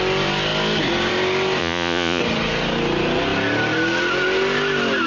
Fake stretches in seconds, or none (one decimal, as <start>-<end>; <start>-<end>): 1.6-2.2